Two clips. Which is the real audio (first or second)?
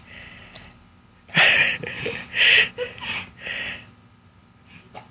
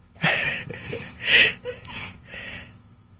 first